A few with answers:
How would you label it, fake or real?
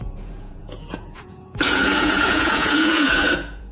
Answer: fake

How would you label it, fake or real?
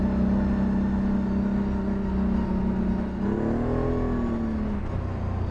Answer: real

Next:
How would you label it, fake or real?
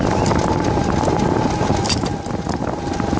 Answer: real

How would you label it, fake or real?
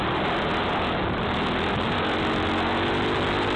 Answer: real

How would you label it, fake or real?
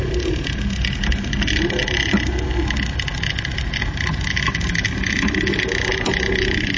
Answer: real